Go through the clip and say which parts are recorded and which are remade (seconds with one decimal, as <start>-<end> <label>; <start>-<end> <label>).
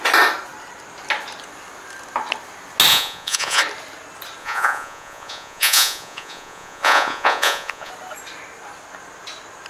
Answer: 0.0-2.9 recorded; 2.9-3.6 remade; 3.6-4.4 recorded; 4.4-7.9 remade; 7.9-9.7 recorded